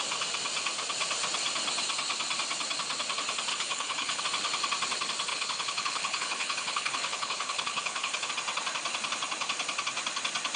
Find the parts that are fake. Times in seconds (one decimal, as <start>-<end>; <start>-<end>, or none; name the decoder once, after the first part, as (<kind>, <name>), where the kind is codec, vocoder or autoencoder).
3.5-4.2 (codec, HILCodec); 5.3-8.3